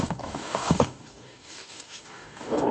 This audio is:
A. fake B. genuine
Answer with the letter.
A